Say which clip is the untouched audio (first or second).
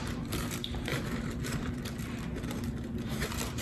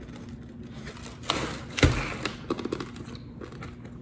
second